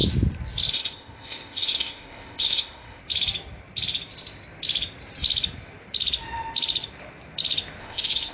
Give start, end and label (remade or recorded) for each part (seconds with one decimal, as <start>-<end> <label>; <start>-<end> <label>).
0.0-0.7 recorded; 0.7-3.0 remade; 3.0-7.8 recorded; 7.8-8.3 remade